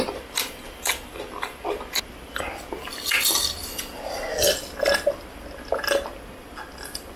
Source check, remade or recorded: recorded